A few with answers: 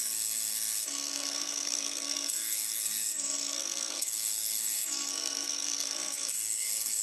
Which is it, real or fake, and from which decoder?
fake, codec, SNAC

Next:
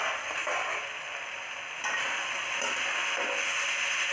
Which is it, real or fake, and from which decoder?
real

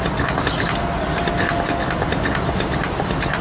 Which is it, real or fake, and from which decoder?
real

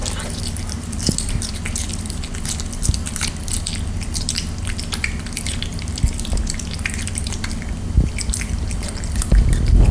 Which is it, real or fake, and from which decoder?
real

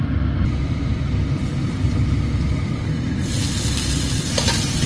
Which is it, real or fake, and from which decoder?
real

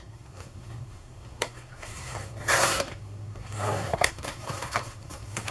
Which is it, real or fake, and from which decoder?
fake, codec, SNAC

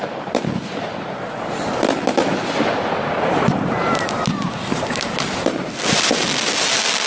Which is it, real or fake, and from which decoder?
real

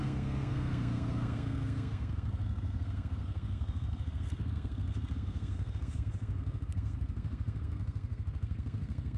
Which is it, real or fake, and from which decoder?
fake, codec, SNAC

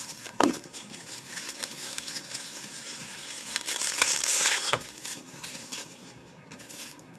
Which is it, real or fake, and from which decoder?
fake, codec, SNAC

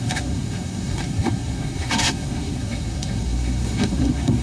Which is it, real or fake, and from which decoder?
fake, codec, SNAC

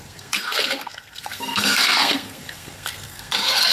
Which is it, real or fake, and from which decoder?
fake, codec, SNAC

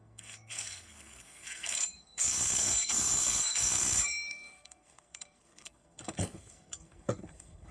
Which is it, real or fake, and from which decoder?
fake, codec, SNAC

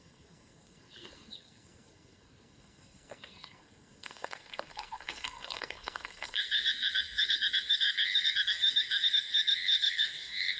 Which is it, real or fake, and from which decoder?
fake, codec, SNAC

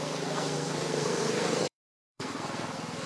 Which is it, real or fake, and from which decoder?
fake, codec, SNAC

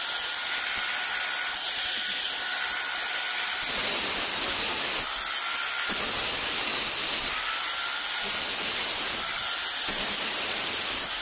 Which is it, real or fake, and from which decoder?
real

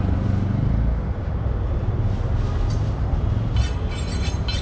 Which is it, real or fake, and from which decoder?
real